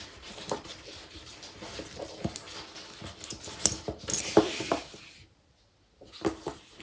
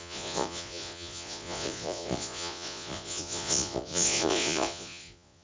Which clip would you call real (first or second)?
first